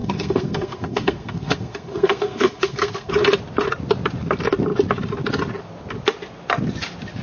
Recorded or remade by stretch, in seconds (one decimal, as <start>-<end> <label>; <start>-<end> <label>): 0.0-3.1 remade; 3.1-7.2 recorded